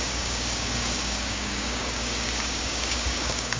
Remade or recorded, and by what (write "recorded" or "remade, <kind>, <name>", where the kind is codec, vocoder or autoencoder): remade, codec, DAC